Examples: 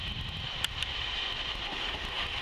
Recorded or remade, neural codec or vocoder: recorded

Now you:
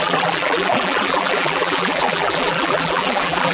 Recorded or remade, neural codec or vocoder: remade, vocoder, BigVGAN v2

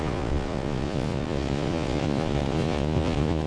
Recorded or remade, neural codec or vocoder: remade, vocoder, Vocos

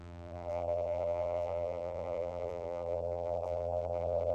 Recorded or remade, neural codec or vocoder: remade, vocoder, BigVGAN v2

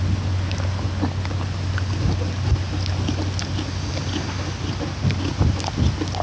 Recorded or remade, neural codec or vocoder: recorded